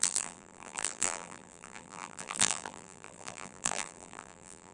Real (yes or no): no